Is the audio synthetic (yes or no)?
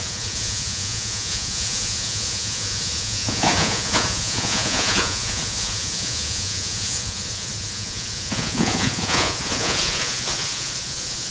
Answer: yes